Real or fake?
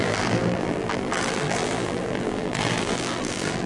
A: fake